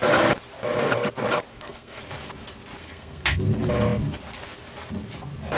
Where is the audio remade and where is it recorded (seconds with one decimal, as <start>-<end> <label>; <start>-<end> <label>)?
0.0-1.5 recorded; 1.5-2.0 remade; 2.0-2.8 recorded; 2.8-3.4 remade; 3.4-5.6 recorded